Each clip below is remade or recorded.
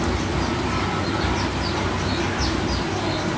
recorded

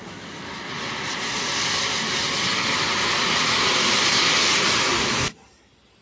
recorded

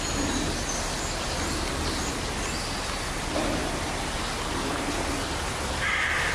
recorded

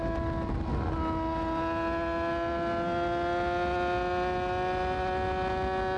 recorded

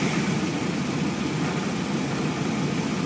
remade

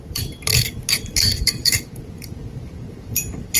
remade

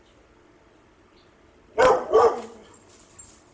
recorded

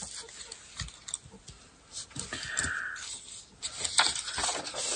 recorded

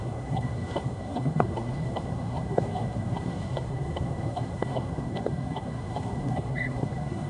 remade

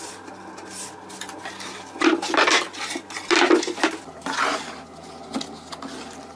recorded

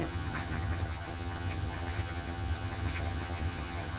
remade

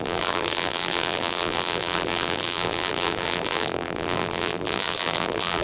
remade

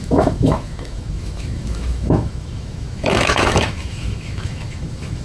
remade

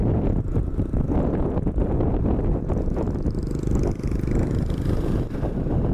recorded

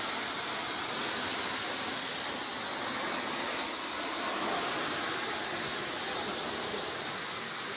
recorded